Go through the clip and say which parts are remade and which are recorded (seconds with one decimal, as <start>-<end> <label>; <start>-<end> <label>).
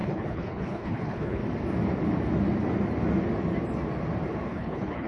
0.0-1.4 remade; 1.4-4.5 recorded; 4.5-5.1 remade